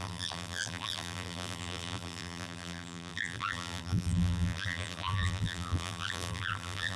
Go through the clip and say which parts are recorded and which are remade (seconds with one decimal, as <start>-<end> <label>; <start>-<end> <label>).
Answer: 0.0-7.0 remade